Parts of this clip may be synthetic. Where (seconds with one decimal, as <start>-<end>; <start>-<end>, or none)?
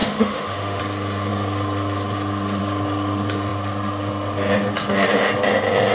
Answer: 0.0-0.8